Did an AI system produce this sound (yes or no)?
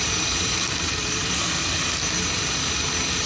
no